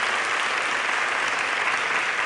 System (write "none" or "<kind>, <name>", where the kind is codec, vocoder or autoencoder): none